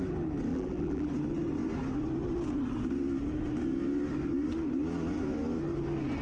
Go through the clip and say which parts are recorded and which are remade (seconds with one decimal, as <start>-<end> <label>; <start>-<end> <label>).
0.0-0.5 recorded; 0.5-1.1 remade; 1.1-6.2 recorded